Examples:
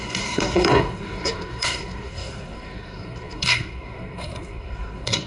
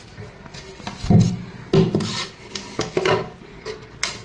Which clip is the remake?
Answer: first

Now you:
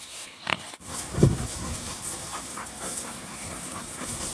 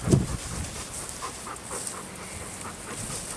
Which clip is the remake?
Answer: first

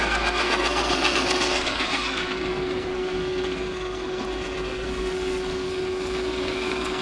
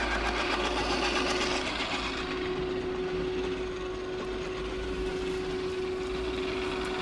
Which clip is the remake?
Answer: first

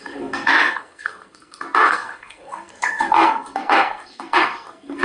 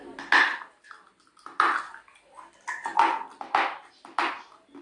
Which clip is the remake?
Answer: first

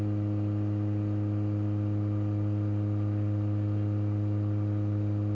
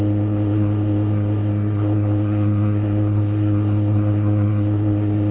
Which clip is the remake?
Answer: second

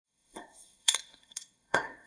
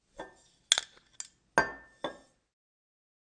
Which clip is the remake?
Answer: first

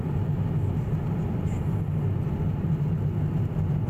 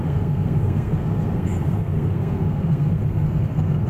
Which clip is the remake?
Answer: second